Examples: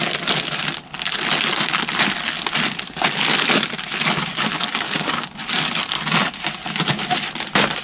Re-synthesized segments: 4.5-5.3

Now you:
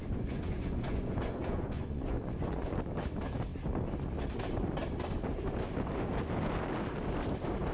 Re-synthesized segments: 0.0-2.7

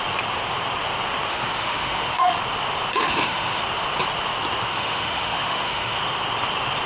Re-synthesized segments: 1.3-2.4; 2.9-3.6; 4.7-6.0

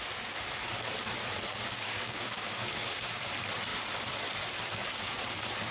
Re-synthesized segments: 1.5-3.2

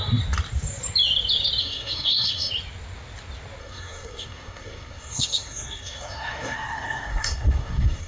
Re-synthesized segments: 1.6-2.5; 3.6-8.1

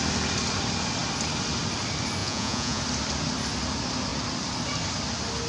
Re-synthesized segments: 2.2-2.8

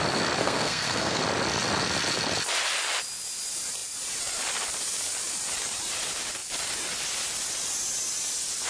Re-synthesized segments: 0.4-1.2

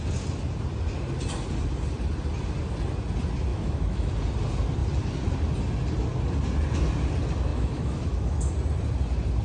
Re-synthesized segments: 3.5-4.1; 7.5-8.5